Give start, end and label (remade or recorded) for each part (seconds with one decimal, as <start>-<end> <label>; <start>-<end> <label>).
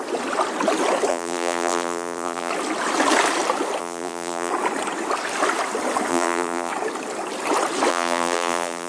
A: 0.0-1.1 recorded; 1.1-2.5 remade; 2.5-3.8 recorded; 3.8-4.5 remade; 4.5-6.1 recorded; 6.1-6.7 remade; 6.7-7.9 recorded; 7.9-8.9 remade